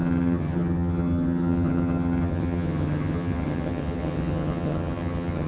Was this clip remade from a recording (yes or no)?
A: yes